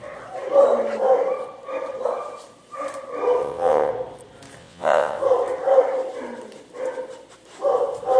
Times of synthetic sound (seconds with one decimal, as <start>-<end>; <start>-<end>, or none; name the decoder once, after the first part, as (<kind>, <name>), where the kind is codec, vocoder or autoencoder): 3.4-3.9 (vocoder, WaveNeXt); 4.6-5.2